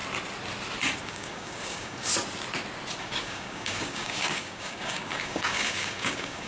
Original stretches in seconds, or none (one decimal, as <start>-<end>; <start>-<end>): 0.0-1.0; 2.1-3.0